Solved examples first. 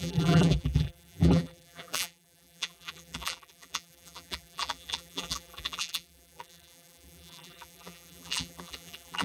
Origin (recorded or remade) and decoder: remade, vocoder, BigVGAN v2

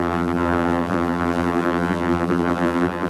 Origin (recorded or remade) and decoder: remade, vocoder, BigVGAN v2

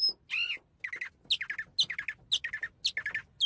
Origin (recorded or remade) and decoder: recorded